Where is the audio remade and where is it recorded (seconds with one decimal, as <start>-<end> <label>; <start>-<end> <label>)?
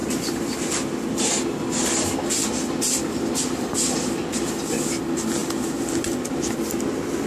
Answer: 0.0-7.3 recorded